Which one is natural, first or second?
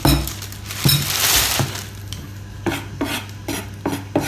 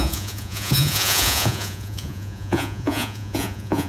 first